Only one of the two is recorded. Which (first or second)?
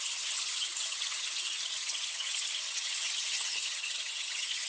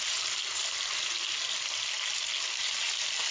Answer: second